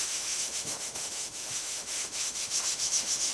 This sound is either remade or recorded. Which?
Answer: remade